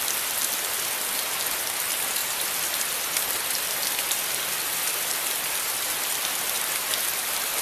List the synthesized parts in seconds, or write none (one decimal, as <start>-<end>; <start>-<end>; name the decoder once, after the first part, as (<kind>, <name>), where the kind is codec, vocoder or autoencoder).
2.2-5.8 (vocoder, BigVGAN v2)